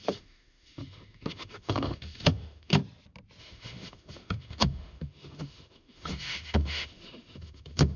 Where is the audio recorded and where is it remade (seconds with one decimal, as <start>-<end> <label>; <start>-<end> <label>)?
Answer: 0.0-2.8 remade; 2.8-3.4 recorded; 3.4-8.0 remade